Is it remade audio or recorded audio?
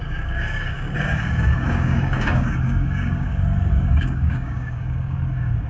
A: remade